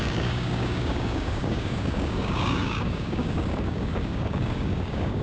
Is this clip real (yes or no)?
no